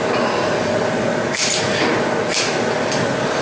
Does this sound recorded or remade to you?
recorded